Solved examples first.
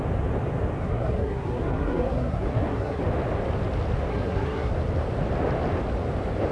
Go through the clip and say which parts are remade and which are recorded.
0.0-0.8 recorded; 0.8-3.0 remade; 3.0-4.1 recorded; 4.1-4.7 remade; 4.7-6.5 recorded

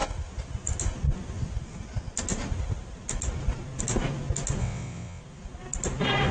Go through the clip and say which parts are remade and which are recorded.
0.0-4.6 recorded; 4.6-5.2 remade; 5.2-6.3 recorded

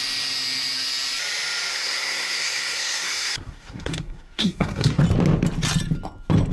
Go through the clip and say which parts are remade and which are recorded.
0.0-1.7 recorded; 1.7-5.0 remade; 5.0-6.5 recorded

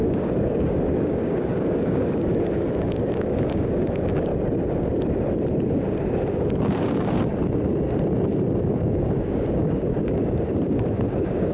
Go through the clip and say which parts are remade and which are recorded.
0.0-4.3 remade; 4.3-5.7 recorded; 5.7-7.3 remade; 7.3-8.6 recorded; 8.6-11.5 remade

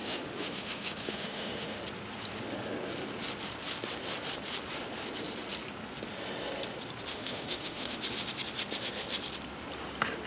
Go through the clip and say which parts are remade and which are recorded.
0.0-1.8 remade; 1.8-7.1 recorded; 7.1-8.0 remade; 8.0-10.3 recorded

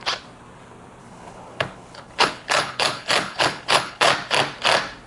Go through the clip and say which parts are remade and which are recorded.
0.0-1.0 recorded; 1.0-4.1 remade; 4.1-5.1 recorded